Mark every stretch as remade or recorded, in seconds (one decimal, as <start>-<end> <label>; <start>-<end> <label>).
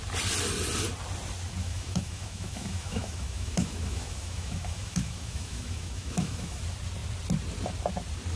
0.0-1.6 recorded; 1.6-6.6 remade; 6.6-8.4 recorded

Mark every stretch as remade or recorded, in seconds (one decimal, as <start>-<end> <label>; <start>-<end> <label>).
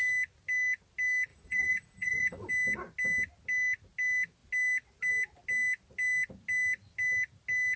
0.0-1.3 recorded; 1.3-2.5 remade; 2.5-7.8 recorded